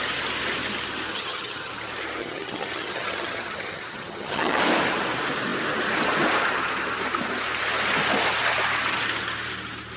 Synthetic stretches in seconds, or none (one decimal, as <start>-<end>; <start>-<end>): 1.1-1.7; 2.2-4.6